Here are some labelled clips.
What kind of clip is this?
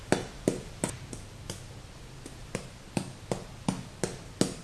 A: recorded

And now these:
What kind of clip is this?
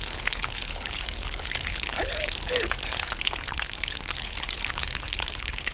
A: remade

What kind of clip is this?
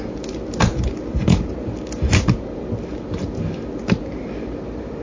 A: recorded